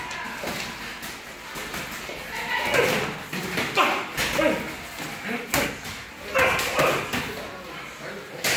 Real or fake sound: real